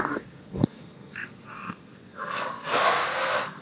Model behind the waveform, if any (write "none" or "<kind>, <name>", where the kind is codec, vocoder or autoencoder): codec, SNAC